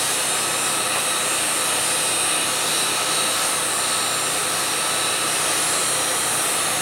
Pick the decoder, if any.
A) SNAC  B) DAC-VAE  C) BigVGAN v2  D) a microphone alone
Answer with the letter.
D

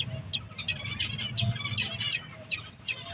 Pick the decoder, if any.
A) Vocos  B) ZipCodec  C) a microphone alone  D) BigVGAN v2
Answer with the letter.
C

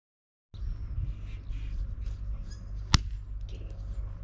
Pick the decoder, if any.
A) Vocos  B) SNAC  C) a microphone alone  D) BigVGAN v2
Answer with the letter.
C